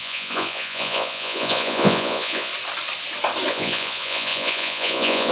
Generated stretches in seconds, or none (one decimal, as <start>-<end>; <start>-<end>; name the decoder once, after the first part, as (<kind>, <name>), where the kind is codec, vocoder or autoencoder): 0.0-2.5 (vocoder, Vocos); 3.5-5.3